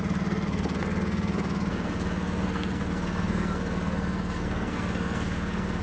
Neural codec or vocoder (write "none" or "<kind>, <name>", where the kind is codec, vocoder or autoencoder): codec, SNAC